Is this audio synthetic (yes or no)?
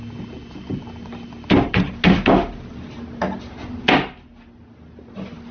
no